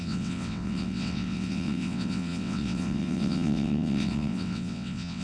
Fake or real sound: fake